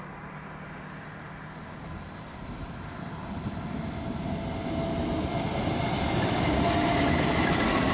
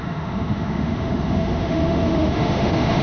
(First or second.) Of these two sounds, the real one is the first